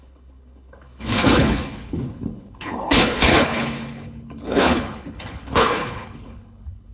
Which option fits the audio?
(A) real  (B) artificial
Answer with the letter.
B